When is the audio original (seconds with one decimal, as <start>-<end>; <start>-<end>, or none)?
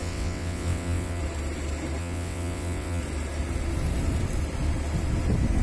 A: 1.2-2.0; 3.0-5.6